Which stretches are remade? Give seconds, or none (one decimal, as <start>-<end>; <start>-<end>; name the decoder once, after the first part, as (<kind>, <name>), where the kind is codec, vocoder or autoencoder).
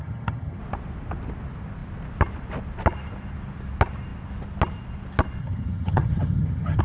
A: 0.0-0.6 (vocoder, HiFi-GAN); 5.4-6.8